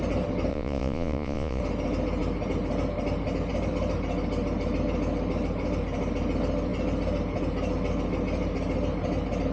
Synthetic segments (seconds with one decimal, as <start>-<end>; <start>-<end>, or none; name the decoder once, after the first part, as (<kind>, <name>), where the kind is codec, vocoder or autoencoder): 0.5-1.6 (vocoder, Vocos)

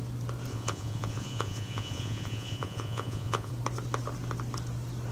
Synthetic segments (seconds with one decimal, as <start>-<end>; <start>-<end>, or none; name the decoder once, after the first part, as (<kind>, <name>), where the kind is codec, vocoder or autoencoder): 0.5-3.5 (vocoder, Vocos)